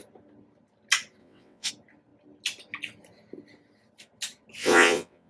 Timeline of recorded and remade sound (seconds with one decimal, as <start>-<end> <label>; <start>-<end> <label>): 0.0-1.2 recorded; 1.2-1.7 remade; 1.7-4.6 recorded; 4.6-5.3 remade